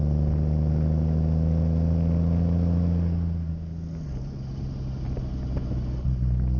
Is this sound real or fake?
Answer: real